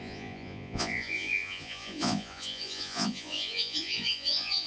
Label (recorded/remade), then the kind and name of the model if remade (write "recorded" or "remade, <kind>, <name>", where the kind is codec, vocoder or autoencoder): remade, vocoder, Vocos